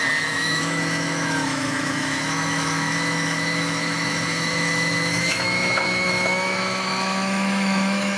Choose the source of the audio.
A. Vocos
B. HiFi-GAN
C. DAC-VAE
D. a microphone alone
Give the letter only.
C